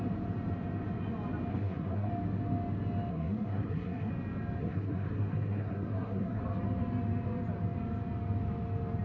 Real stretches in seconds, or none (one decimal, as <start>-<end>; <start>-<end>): 0.0-1.5; 2.1-3.1; 4.1-4.6; 6.4-9.0